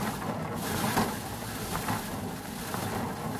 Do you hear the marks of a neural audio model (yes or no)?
no